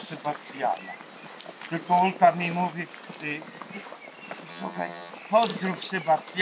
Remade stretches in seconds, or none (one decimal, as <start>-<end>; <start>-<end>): 4.5-5.1